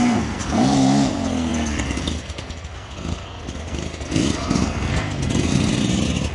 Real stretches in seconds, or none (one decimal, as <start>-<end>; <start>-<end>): 5.7-6.3